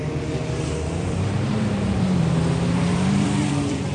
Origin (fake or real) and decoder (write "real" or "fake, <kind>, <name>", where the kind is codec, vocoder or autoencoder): fake, vocoder, BigVGAN v2